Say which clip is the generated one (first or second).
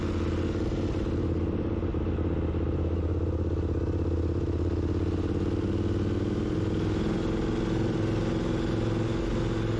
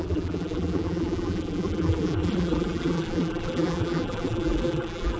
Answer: second